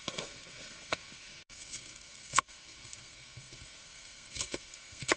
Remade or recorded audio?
remade